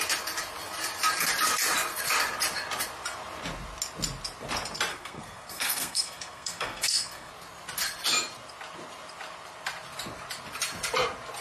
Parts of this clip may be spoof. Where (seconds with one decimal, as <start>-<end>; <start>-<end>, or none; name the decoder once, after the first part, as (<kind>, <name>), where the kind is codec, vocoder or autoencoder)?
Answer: 4.9-7.3 (codec, SNAC)